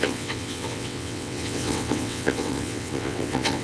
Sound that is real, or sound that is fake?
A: fake